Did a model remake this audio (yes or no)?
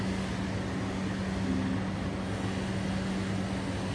no